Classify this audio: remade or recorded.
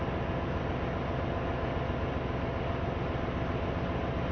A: recorded